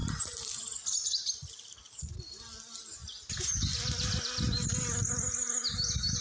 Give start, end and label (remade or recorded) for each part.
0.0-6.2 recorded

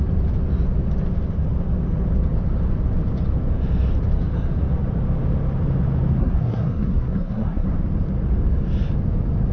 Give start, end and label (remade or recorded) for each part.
0.0-6.2 recorded; 6.2-7.7 remade; 7.7-9.5 recorded

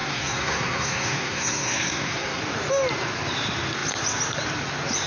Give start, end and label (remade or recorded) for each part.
0.0-2.4 remade; 2.4-5.1 recorded

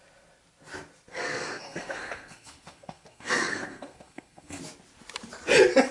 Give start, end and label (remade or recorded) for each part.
0.0-1.1 recorded; 1.1-4.6 remade; 4.6-5.9 recorded

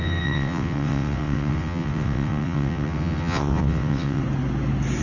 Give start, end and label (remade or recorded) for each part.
0.0-4.2 remade; 4.2-5.0 recorded